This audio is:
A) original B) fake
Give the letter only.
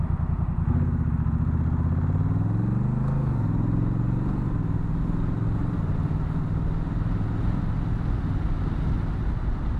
A